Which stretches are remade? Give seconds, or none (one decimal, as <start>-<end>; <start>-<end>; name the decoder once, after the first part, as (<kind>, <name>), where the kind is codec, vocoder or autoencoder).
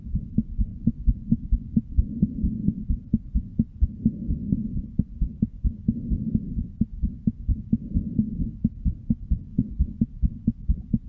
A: 0.7-5.4 (vocoder, Vocos); 9.5-10.0